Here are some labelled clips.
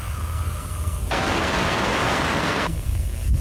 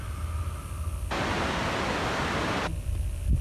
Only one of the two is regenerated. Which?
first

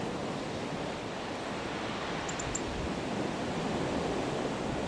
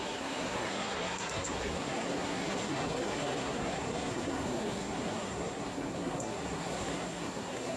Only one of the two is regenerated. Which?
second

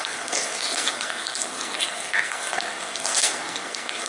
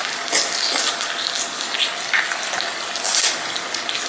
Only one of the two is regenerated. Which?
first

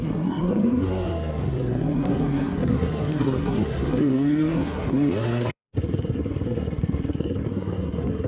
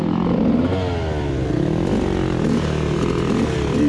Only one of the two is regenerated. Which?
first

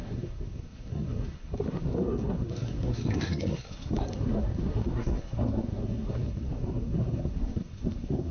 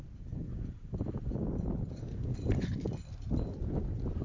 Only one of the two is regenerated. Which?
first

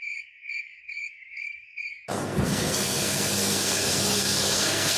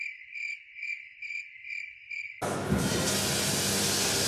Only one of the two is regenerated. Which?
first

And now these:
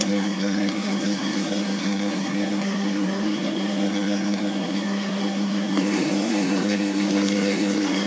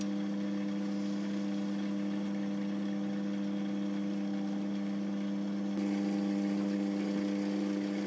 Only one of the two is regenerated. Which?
first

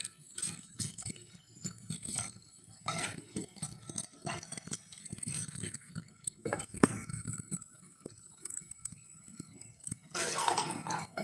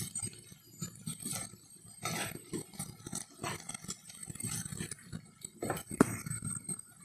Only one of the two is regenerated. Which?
first